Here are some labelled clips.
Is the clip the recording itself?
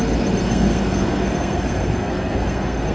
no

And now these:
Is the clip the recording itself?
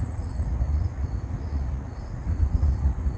no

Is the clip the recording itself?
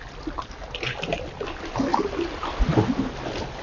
yes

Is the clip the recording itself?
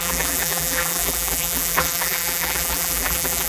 no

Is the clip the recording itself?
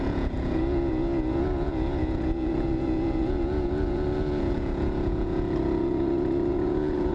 no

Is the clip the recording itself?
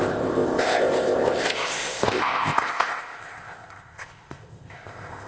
no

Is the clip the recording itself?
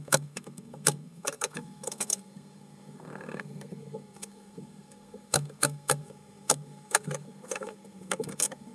no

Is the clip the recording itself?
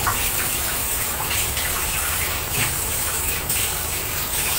no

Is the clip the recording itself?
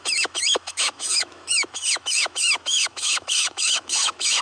no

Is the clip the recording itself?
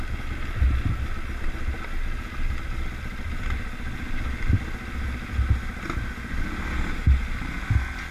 yes